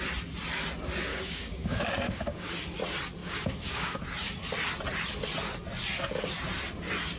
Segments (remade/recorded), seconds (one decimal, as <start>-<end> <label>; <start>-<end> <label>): 0.0-1.1 recorded; 1.1-2.5 remade; 2.5-3.2 recorded; 3.2-4.0 remade; 4.0-7.2 recorded